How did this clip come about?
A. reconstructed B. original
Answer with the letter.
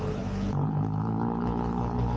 A